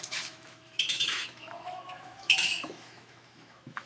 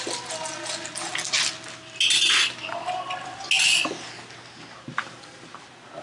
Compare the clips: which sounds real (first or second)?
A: second